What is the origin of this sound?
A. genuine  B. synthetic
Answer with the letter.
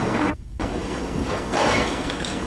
B